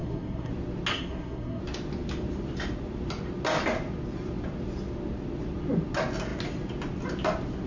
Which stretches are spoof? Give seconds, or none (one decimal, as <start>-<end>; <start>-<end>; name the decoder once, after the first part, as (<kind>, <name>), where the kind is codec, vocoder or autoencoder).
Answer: 0.0-0.5 (codec, SNAC); 0.9-1.6